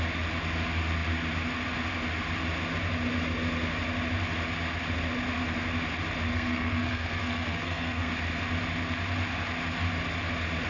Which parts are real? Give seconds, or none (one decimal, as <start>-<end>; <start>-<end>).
0.0-6.3; 8.1-10.7